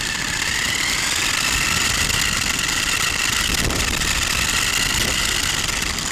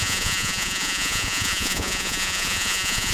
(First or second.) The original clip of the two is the first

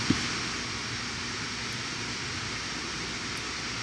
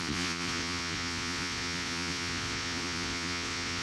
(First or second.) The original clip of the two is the first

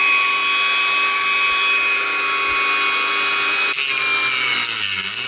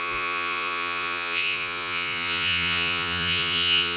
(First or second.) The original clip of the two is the first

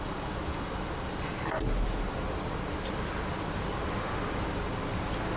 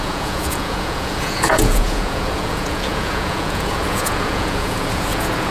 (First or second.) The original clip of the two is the first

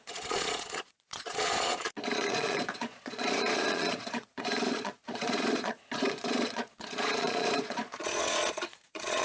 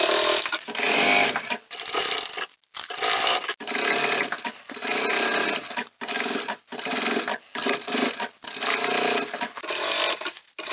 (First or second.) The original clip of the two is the second